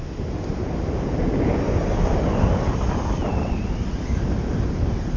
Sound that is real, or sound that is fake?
real